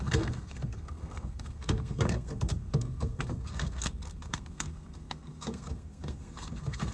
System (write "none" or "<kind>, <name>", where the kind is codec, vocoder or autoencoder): codec, SNAC